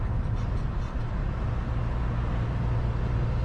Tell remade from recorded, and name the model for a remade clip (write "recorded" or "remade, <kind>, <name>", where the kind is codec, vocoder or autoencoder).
recorded